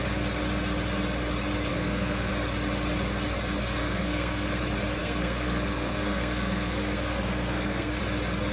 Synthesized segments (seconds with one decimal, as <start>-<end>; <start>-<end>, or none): 1.7-2.3; 3.8-4.6; 5.0-8.0